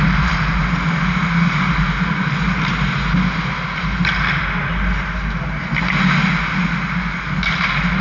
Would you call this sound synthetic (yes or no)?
no